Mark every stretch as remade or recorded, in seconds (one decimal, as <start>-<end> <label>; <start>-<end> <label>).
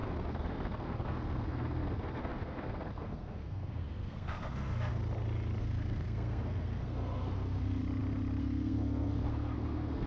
0.0-4.9 remade; 4.9-5.6 recorded; 5.6-7.8 remade; 7.8-8.4 recorded; 8.4-10.1 remade